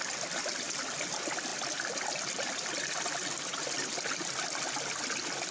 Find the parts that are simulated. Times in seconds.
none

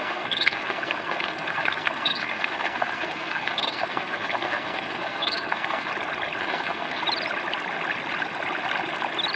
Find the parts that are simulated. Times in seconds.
0.0-5.9 (codec, SNAC); 6.4-7.0

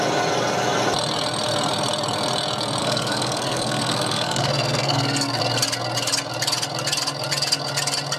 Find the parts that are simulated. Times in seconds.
2.8-5.4 (codec, SNAC)

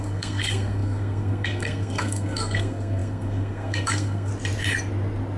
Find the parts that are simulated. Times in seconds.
0.0-4.3 (codec, SNAC)

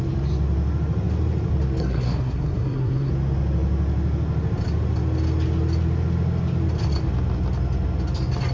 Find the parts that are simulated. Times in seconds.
1.8-3.1 (codec, SNAC)

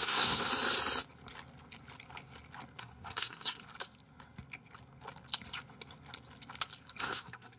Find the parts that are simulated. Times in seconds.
0.0-0.5 (codec, SNAC); 2.8-3.6; 7.0-7.6